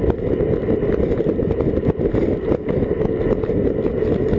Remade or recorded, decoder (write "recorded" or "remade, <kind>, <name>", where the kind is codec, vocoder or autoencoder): recorded